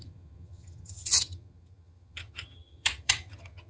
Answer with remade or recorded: remade